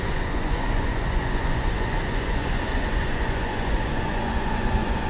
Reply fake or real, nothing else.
fake